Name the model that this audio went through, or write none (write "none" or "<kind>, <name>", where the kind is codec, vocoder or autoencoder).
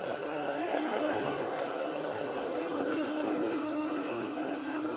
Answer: codec, SNAC